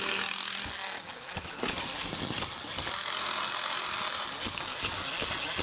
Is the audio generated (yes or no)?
no